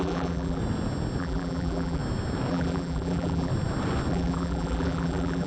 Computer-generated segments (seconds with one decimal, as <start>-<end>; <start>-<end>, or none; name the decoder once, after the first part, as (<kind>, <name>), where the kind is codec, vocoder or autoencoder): 0.0-0.6 (vocoder, BigVGAN v2); 1.2-2.0; 2.5-3.5; 4.1-5.5